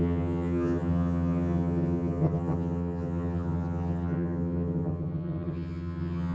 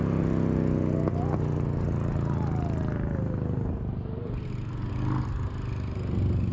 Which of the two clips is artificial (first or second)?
first